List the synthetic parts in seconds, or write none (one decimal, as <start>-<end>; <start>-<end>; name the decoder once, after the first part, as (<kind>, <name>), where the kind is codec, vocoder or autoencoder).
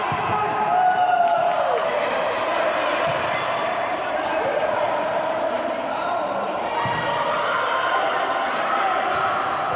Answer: 2.5-6.7 (vocoder, BigVGAN v2)